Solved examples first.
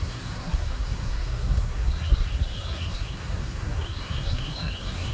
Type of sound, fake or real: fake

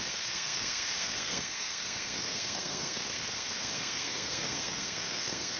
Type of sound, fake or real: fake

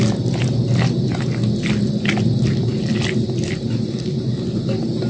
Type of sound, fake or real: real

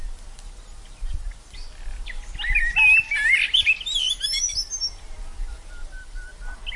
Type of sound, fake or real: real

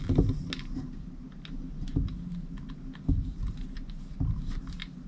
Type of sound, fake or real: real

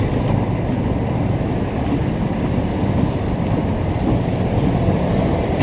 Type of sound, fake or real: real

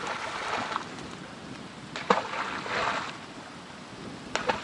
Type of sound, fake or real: real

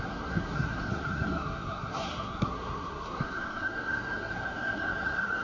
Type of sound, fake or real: fake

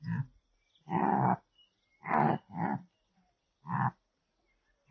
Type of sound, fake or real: real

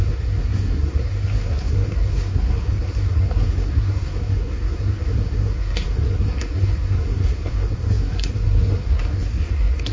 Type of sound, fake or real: fake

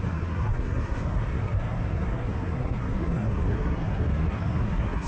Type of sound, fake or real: fake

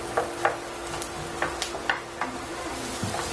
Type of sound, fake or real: real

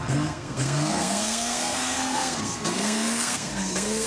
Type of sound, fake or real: fake